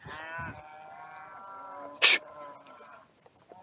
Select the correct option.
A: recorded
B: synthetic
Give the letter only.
A